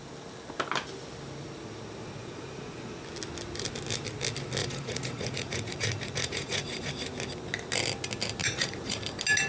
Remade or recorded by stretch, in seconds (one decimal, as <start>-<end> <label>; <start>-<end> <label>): 0.0-2.2 recorded; 2.2-3.0 remade; 3.0-4.6 recorded; 4.6-6.9 remade; 6.9-8.4 recorded; 8.4-9.0 remade; 9.0-9.5 recorded